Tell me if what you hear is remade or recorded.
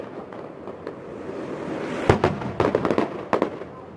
recorded